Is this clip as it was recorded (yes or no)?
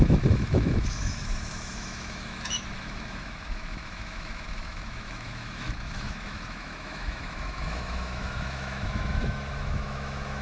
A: no